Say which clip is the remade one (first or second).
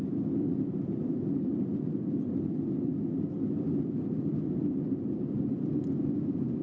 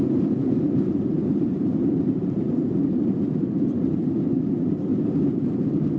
second